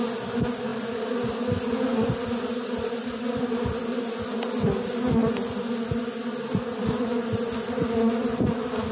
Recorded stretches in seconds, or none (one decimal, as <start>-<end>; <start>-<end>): 0.0-8.9

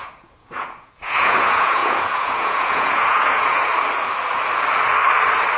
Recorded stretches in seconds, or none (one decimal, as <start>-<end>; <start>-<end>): 3.7-5.6